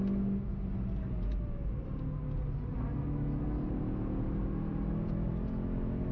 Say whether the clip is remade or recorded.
recorded